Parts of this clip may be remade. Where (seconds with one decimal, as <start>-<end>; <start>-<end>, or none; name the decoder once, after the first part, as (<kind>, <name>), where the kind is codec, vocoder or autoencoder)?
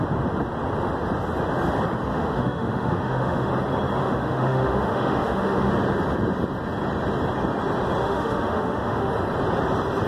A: 2.1-3.5 (autoencoder, DAC-VAE); 4.0-5.7; 8.0-9.1